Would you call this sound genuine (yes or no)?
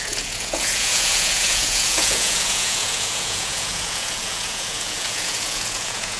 no